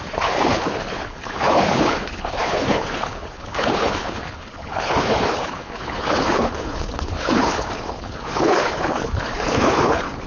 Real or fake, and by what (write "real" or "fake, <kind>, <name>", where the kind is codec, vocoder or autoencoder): fake, codec, HILCodec